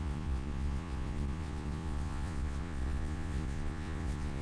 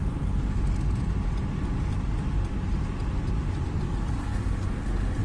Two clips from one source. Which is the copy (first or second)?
first